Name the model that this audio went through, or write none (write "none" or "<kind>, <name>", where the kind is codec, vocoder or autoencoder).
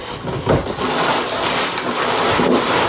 none